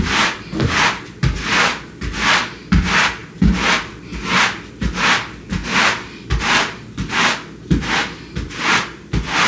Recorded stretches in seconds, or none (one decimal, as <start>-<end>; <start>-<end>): 0.0-9.5